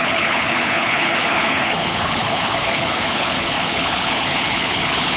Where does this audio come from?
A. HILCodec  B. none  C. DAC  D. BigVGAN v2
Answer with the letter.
A